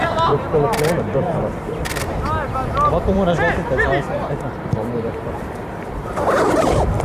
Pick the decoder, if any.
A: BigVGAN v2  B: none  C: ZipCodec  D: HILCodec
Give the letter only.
A